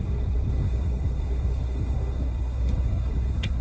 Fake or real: fake